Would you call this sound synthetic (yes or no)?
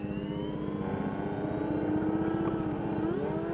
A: no